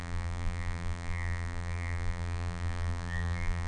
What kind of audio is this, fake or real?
fake